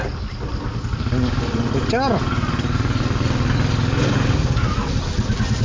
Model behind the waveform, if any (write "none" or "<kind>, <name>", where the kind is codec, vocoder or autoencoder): none